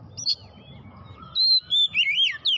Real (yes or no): yes